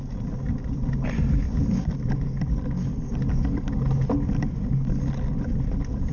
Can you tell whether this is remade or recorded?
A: recorded